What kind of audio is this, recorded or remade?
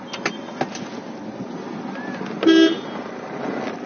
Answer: recorded